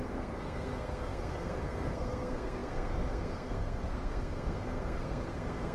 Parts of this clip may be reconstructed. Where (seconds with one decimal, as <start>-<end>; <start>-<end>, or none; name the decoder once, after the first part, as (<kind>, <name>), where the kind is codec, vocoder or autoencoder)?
0.0-5.7 (codec, SNAC)